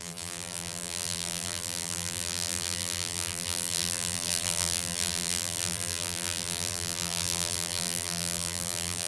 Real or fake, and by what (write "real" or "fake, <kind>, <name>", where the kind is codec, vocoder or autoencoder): fake, vocoder, BigVGAN v2